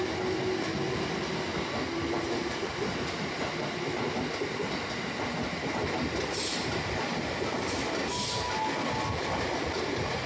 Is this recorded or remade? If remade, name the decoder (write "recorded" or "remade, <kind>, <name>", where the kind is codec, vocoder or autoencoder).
recorded